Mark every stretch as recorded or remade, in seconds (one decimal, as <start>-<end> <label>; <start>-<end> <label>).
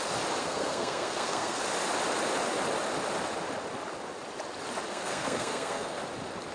0.0-0.4 recorded; 0.4-1.6 remade; 1.6-4.9 recorded; 4.9-6.0 remade; 6.0-6.5 recorded